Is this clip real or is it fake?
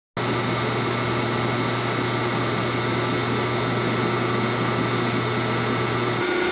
real